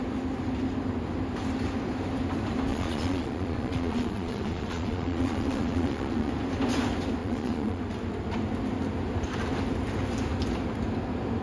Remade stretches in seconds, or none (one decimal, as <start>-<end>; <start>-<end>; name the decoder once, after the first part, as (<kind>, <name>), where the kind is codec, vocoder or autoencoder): 2.7-6.3 (vocoder, Vocos); 7.2-7.8